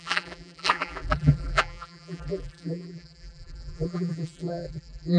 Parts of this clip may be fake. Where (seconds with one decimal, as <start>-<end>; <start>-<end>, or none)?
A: 0.0-5.2